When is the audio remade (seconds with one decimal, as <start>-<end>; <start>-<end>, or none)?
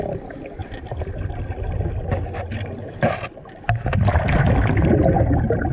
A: none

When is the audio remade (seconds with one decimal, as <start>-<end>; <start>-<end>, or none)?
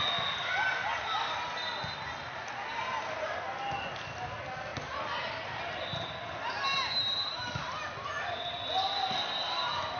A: none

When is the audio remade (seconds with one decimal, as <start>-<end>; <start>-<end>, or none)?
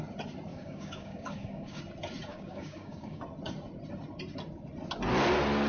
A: 0.5-1.8; 2.3-3.2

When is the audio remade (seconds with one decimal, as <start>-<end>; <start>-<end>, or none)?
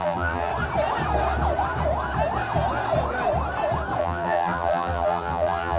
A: 0.0-0.5; 4.0-5.8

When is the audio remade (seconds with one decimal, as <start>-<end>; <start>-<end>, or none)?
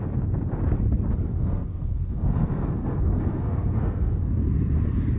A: 1.3-4.2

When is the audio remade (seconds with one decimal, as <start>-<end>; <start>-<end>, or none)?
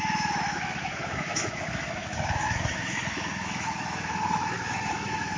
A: 0.0-5.4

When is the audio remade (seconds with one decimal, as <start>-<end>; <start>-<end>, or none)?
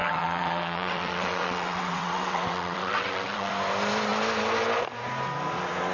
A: 0.0-3.5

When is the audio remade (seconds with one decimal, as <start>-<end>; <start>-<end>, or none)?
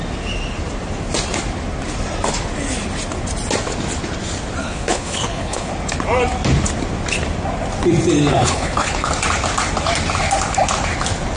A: 4.6-5.7; 8.3-9.1